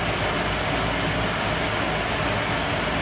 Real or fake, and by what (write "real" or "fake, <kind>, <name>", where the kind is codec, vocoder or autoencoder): real